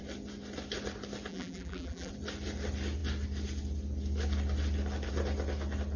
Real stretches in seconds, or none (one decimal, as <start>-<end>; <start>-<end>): 0.0-1.3; 2.1-6.0